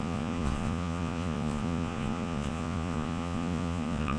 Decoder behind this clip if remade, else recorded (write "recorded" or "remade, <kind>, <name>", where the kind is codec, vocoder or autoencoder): remade, vocoder, Vocos